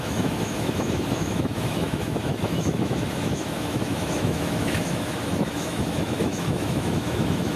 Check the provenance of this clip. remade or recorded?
remade